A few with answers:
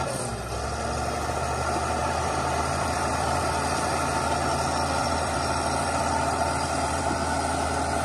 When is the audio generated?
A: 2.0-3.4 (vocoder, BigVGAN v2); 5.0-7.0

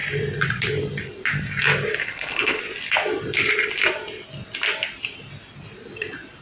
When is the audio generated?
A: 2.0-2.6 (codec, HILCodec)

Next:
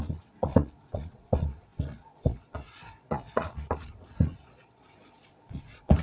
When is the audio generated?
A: 0.0-6.0 (vocoder, Vocos)